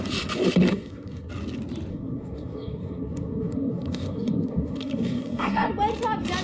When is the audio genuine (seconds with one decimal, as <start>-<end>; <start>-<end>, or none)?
0.0-0.7; 1.3-1.9; 5.7-6.4

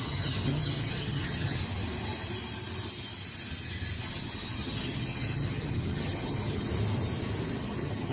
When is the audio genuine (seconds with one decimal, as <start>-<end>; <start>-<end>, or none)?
1.6-4.0; 6.7-7.6

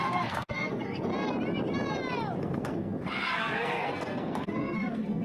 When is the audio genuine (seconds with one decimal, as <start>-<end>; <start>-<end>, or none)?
1.1-2.4

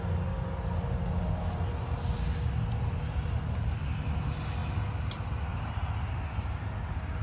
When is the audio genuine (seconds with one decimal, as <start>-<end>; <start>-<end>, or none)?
0.0-7.2

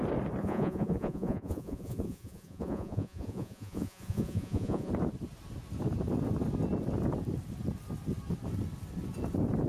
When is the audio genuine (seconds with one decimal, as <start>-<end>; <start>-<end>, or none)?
0.0-0.4; 4.9-9.7

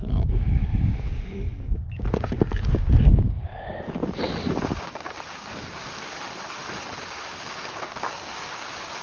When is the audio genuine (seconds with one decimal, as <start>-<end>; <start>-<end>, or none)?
3.5-4.8; 6.1-7.0